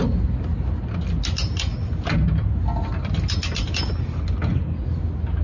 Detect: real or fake real